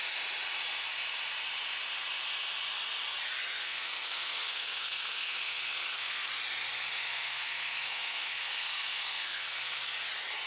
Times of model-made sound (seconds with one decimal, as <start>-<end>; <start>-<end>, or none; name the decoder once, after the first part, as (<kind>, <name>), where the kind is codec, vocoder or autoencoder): 3.6-6.3 (codec, SNAC); 6.9-9.8